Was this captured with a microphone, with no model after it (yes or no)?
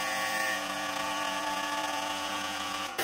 no